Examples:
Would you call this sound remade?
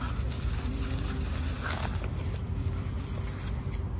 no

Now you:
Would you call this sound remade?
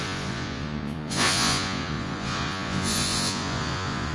yes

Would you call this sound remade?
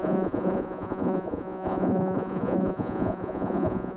yes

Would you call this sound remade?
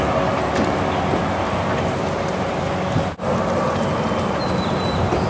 no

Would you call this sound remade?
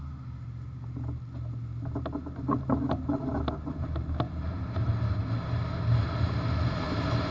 no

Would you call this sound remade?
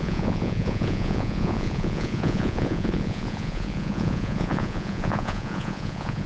yes